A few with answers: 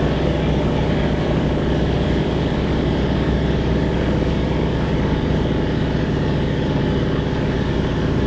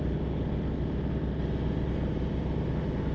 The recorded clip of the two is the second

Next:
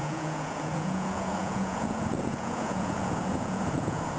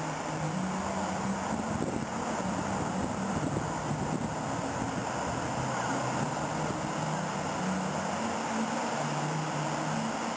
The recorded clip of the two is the second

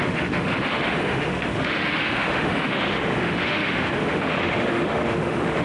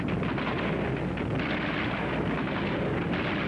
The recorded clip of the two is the second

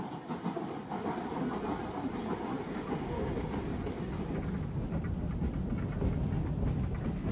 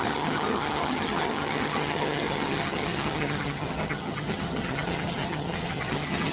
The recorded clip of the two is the first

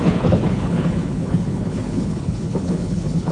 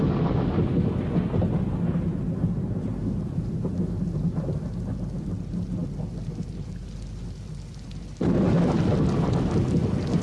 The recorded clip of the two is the second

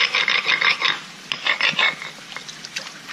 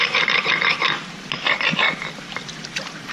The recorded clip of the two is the first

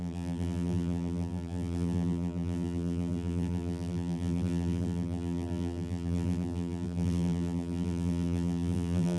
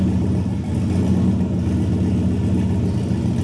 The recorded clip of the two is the second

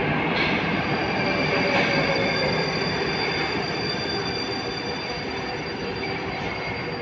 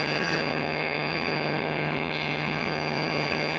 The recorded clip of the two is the first